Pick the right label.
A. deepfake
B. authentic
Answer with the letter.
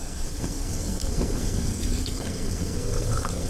A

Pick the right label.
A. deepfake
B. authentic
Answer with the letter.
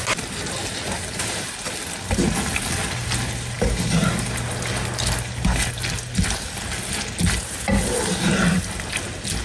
B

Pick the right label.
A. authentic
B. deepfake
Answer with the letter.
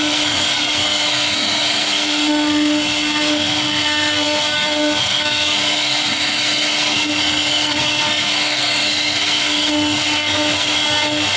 B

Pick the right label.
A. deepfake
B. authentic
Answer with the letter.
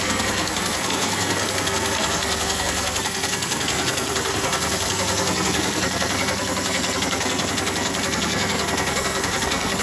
A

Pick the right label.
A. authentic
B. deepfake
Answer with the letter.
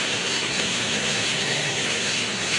B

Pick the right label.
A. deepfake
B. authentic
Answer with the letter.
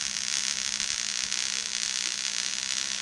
B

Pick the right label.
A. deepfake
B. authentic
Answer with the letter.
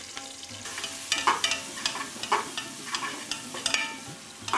B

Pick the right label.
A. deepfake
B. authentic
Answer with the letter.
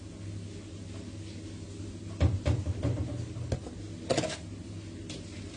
B